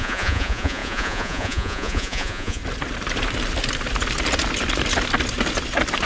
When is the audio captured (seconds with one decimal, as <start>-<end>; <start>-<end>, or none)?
2.6-6.1